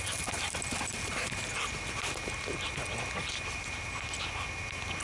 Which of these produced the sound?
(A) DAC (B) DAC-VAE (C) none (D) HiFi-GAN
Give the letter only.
C